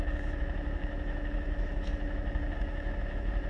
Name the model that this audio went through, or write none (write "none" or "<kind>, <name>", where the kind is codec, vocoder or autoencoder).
autoencoder, DAC-VAE